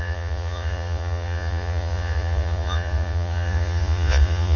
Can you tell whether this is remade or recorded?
remade